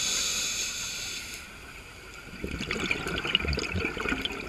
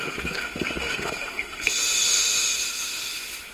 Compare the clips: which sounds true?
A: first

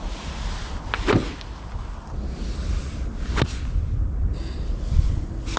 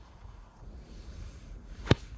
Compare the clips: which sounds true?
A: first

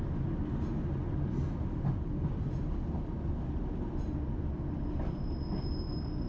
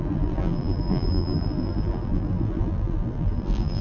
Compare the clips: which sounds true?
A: first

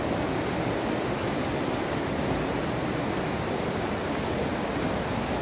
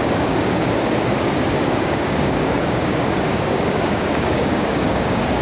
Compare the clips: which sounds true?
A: first